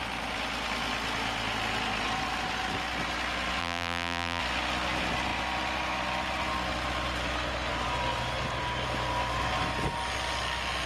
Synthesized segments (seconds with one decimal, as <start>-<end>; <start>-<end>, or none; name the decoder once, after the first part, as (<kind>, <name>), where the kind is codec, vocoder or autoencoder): 3.6-4.4 (vocoder, BigVGAN v2)